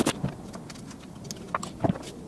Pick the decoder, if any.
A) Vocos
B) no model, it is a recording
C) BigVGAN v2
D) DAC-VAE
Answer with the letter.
B